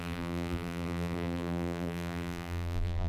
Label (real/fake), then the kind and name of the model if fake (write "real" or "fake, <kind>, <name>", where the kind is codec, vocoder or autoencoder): fake, vocoder, BigVGAN v2